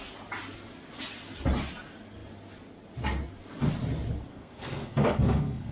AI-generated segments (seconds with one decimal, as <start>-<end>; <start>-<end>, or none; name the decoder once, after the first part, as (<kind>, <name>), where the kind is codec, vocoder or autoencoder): 4.3-5.7 (codec, SNAC)